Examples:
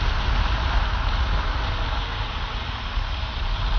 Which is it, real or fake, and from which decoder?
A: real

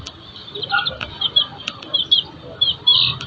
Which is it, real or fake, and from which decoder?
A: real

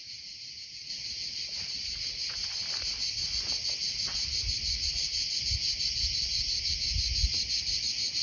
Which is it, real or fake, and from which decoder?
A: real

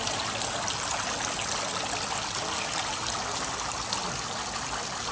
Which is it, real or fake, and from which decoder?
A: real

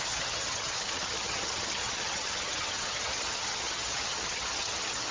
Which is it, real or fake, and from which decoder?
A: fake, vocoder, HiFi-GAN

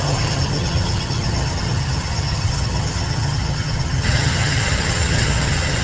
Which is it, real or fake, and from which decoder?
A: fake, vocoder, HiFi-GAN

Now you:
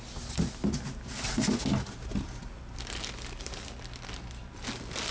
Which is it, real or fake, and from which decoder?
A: real